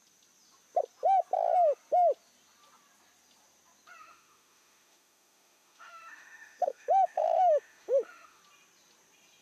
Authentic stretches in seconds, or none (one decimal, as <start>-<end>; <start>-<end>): 0.0-4.0; 8.4-9.4